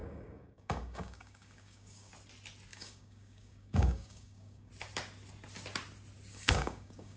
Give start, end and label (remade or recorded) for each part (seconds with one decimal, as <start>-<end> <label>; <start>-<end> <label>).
0.0-2.1 remade; 2.1-2.7 recorded; 2.7-4.7 remade; 4.7-6.3 recorded; 6.3-7.2 remade

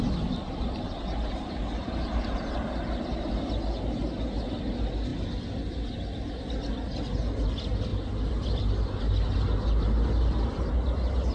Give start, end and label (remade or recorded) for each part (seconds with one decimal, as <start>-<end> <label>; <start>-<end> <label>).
0.0-7.9 recorded; 7.9-8.9 remade; 8.9-11.3 recorded

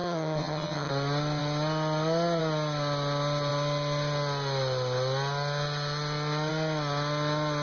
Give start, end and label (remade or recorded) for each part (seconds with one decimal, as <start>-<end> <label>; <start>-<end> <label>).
0.0-0.9 remade; 0.9-7.6 recorded

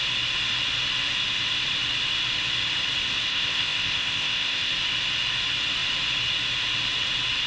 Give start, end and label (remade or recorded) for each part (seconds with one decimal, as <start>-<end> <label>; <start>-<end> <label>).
0.0-3.3 recorded; 3.3-4.7 remade; 4.7-7.5 recorded

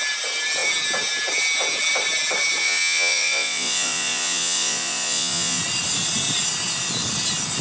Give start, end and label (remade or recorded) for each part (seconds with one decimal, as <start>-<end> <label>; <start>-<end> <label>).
0.0-2.6 recorded; 2.6-5.6 remade; 5.6-7.6 recorded